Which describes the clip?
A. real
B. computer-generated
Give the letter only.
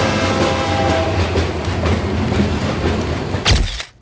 A